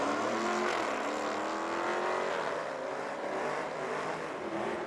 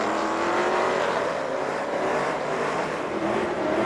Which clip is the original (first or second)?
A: first